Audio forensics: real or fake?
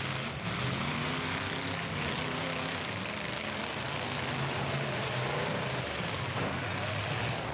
real